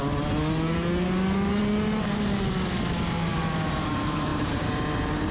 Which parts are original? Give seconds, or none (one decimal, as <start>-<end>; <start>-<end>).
0.0-4.3